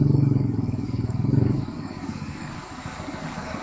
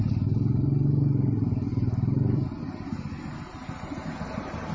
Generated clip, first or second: first